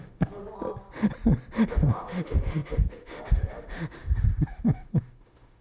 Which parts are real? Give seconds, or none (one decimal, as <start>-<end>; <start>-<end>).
0.4-1.6